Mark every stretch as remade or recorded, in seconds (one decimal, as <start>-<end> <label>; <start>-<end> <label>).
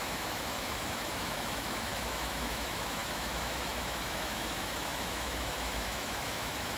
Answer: 0.0-6.8 remade